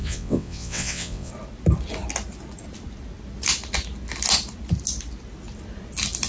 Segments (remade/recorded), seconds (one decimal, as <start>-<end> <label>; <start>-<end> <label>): 0.0-1.3 remade; 1.3-6.3 recorded